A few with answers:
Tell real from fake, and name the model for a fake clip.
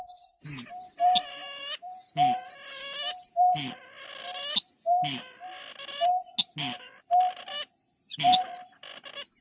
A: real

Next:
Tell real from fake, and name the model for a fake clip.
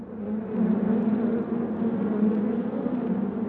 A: real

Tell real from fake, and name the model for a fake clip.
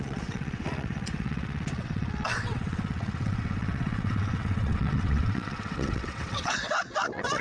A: fake, vocoder, WaveNeXt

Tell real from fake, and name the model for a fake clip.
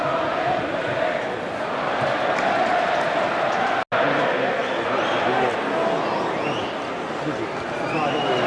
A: real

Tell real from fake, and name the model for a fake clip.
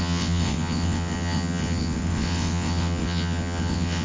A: fake, vocoder, WaveNeXt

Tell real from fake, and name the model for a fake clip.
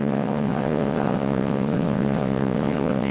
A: fake, vocoder, WaveNeXt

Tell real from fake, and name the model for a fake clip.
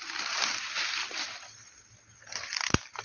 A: real